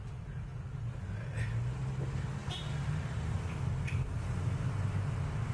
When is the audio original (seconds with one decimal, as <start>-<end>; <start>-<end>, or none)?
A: 0.0-5.5